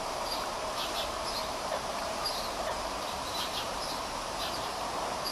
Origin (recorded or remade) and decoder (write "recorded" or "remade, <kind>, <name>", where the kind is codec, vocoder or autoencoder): remade, vocoder, BigVGAN v2